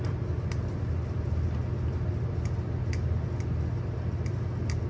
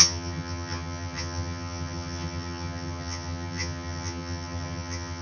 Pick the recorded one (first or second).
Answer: first